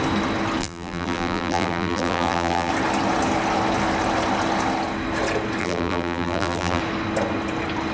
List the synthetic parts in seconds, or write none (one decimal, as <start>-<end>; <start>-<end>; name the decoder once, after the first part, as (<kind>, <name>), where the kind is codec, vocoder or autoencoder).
0.6-2.7 (vocoder, BigVGAN v2); 5.6-6.8